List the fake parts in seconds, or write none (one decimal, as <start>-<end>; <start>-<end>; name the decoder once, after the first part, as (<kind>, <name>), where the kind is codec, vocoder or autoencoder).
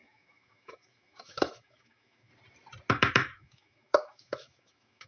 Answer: 0.0-2.3 (autoencoder, DAC-VAE); 2.9-5.1